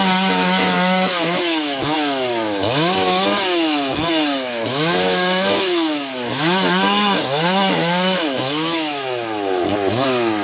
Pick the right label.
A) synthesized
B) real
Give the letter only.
A